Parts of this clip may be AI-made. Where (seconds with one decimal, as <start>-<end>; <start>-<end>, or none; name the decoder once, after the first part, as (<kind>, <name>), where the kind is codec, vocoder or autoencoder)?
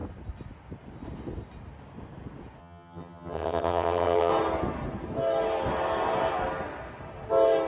2.6-4.3 (vocoder, HiFi-GAN)